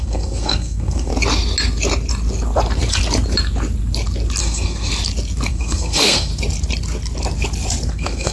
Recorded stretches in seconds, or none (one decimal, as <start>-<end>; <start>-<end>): 1.1-4.4; 4.9-5.5; 6.3-7.9